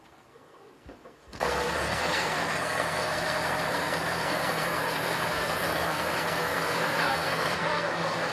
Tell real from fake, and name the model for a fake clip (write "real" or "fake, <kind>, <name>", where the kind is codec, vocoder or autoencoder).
fake, codec, SNAC